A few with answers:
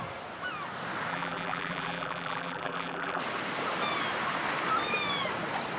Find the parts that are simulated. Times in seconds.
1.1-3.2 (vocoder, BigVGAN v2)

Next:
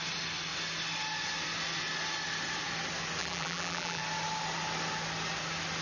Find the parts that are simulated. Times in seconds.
3.2-4.0 (vocoder, BigVGAN v2)

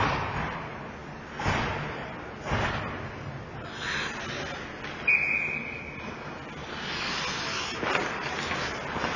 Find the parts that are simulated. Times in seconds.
none